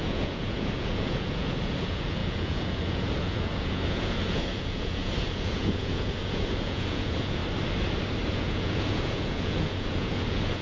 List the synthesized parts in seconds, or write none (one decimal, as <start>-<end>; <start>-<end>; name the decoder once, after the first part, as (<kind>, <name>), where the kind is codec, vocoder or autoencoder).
0.0-7.4 (vocoder, Vocos); 8.3-10.6